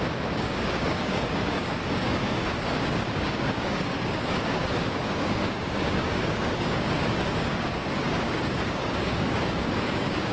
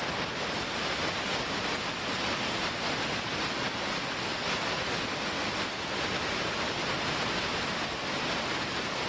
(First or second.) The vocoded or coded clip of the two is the first